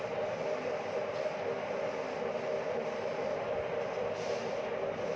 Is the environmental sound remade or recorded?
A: recorded